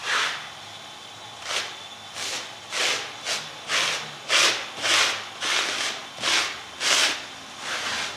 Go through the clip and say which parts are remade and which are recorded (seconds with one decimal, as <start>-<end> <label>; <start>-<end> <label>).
0.0-8.2 recorded